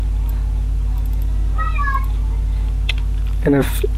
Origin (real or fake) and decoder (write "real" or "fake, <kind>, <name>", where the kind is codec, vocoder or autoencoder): fake, vocoder, BigVGAN v2